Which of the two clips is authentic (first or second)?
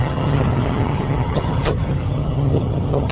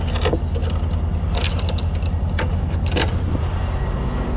second